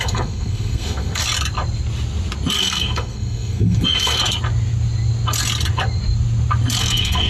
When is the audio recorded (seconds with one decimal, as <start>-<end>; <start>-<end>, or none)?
1.2-2.6; 4.2-6.8